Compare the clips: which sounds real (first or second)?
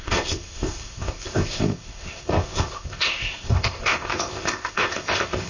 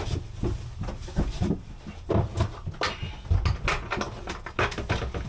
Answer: second